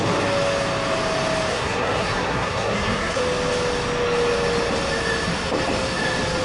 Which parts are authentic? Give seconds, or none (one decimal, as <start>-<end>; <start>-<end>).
0.0-1.5; 3.2-6.4